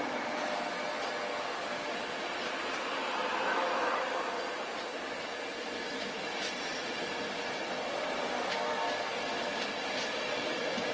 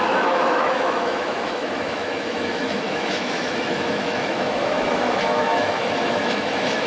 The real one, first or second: first